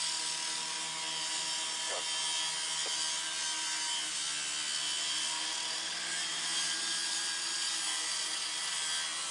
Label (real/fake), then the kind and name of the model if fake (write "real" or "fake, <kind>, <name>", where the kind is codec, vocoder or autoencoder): real